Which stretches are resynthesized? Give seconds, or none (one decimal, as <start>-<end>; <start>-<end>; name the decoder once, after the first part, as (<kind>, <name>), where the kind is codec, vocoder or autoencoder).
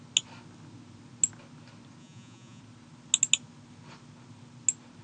2.0-2.6 (vocoder, Vocos)